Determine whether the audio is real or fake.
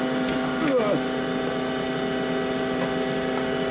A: real